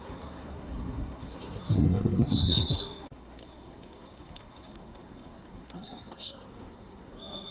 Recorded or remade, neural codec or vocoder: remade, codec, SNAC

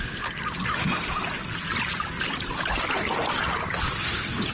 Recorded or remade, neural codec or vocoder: recorded